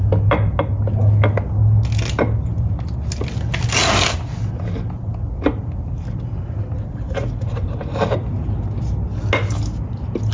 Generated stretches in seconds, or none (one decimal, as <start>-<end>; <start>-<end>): none